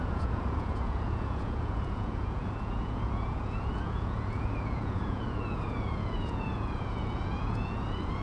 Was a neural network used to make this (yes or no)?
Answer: yes